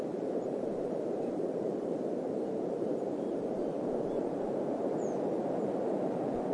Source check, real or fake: fake